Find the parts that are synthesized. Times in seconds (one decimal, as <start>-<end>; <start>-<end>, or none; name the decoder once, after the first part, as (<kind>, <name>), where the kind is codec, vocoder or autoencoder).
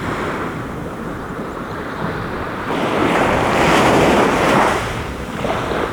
0.8-2.1 (vocoder, BigVGAN v2); 3.0-5.4